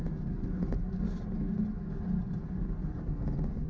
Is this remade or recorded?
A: recorded